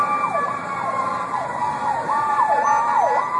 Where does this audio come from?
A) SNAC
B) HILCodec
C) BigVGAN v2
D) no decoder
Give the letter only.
C